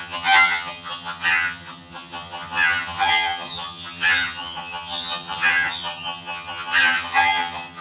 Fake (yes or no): yes